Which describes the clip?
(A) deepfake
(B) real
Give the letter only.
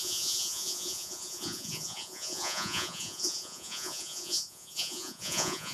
A